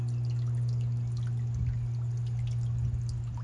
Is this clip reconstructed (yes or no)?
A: no